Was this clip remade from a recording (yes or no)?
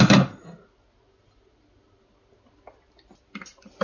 no